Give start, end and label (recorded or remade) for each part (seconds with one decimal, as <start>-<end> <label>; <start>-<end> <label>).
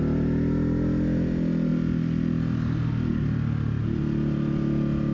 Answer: 0.0-5.1 recorded